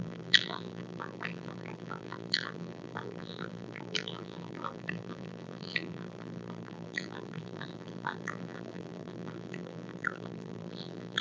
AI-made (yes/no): yes